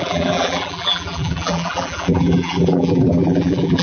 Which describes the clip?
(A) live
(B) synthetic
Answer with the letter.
B